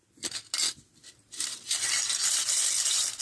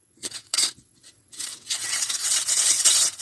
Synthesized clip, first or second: second